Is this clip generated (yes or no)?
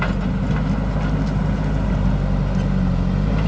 no